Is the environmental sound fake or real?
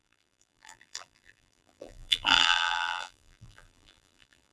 fake